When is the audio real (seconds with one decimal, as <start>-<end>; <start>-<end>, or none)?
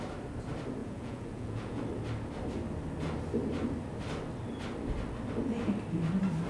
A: 0.0-0.8; 1.8-6.5